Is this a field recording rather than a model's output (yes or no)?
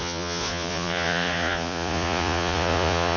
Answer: no